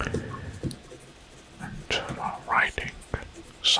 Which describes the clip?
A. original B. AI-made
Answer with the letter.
A